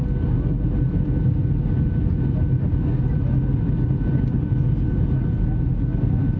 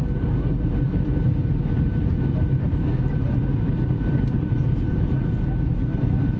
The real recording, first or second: first